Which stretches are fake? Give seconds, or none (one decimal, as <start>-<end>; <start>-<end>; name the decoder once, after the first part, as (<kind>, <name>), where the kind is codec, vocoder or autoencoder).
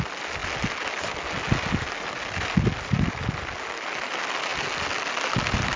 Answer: none